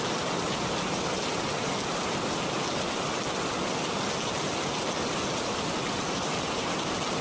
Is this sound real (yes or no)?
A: yes